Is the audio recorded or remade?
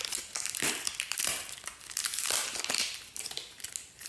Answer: recorded